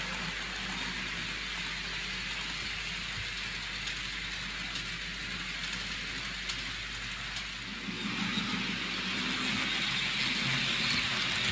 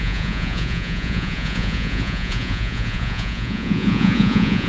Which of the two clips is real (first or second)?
first